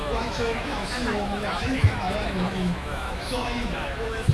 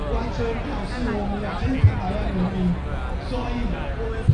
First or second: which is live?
second